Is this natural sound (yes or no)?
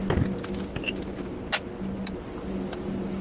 yes